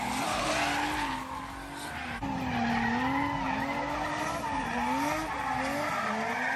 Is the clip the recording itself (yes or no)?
yes